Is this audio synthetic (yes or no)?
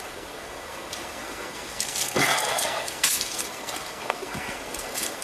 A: yes